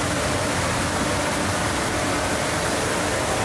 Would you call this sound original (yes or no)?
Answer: yes